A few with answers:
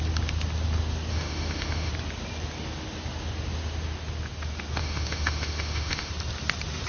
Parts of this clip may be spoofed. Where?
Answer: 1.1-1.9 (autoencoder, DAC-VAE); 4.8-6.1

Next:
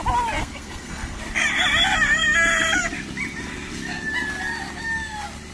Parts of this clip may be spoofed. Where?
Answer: 0.4-1.2 (codec, SNAC)

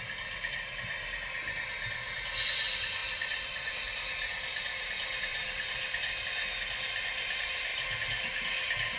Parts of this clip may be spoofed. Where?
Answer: 3.0-3.7 (vocoder, BigVGAN v2); 5.3-6.2

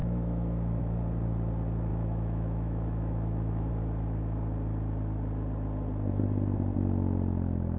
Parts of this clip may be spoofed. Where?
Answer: 0.0-0.8 (autoencoder, DAC-VAE); 1.9-3.7

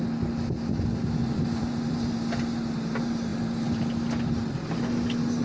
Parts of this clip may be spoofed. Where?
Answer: 1.2-2.2 (vocoder, BigVGAN v2); 3.3-3.8

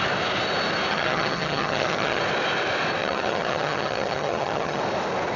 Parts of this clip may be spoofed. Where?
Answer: 0.9-2.2 (vocoder, HiFi-GAN); 3.0-4.8